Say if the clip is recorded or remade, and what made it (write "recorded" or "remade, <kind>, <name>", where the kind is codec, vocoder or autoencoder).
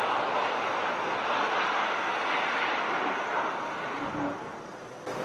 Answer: recorded